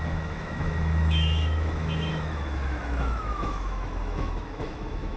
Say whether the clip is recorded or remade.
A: remade